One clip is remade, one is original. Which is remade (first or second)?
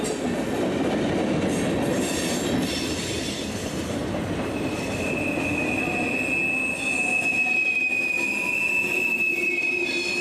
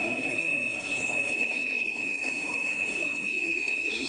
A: second